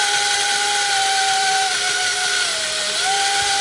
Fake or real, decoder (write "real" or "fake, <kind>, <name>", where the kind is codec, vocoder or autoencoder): real